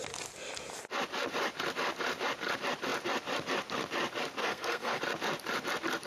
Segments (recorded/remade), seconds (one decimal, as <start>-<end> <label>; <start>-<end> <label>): 0.0-4.4 recorded; 4.4-5.0 remade; 5.0-6.1 recorded

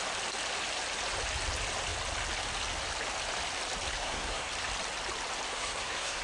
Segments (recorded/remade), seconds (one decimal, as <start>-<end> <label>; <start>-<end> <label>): 0.0-4.0 recorded; 4.0-4.5 remade; 4.5-5.5 recorded; 5.5-6.2 remade

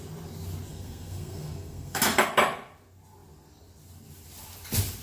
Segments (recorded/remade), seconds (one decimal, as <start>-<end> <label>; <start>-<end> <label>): 0.0-0.7 recorded; 0.7-2.0 remade; 2.0-5.0 recorded

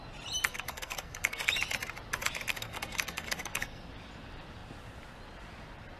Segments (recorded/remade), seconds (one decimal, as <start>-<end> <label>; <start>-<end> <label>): 0.0-0.5 recorded; 0.5-1.5 remade; 1.5-2.5 recorded; 2.5-3.8 remade; 3.8-6.0 recorded